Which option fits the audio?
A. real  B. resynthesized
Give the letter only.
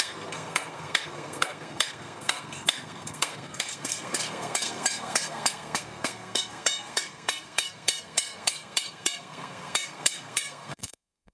B